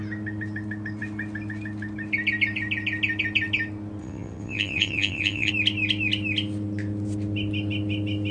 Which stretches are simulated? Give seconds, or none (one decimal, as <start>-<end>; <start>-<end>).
4.0-5.5